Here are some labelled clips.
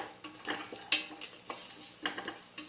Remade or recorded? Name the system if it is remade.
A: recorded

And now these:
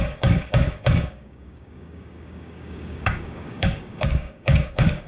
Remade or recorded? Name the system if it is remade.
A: remade, codec, DAC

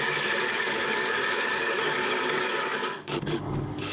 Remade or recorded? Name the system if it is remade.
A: remade, codec, DAC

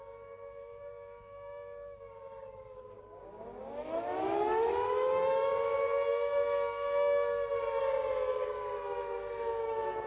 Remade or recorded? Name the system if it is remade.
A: remade, codec, DAC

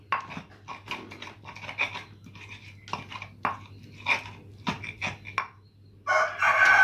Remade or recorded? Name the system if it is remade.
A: recorded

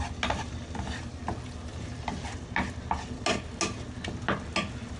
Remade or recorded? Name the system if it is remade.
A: recorded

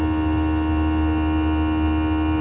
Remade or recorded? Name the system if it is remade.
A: recorded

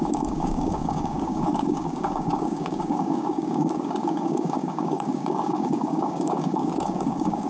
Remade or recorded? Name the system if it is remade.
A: remade, codec, DAC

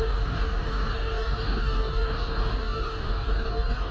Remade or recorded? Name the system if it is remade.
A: remade, codec, DAC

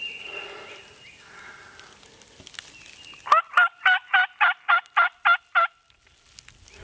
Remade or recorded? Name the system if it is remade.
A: recorded